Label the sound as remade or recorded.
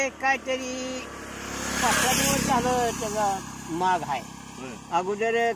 recorded